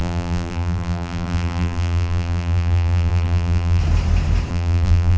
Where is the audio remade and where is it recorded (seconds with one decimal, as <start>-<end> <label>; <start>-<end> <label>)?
0.0-3.8 remade; 3.8-4.5 recorded; 4.5-5.2 remade